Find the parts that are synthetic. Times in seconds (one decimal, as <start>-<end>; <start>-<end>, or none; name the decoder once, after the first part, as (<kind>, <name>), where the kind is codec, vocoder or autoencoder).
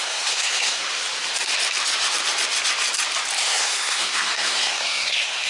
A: 0.0-0.9 (codec, SNAC); 3.4-5.5